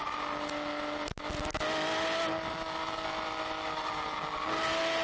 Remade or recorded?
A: recorded